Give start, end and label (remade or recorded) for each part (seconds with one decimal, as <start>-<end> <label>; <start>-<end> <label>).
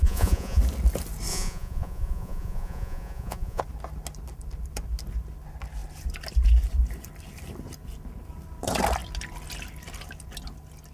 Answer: 0.0-0.6 remade; 0.6-1.3 recorded; 1.3-3.6 remade; 3.6-10.9 recorded